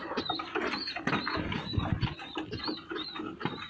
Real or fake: real